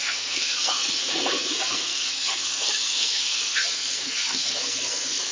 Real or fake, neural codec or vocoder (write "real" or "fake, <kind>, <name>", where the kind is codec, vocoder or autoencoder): fake, codec, SNAC